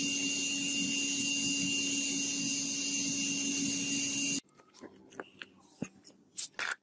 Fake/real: real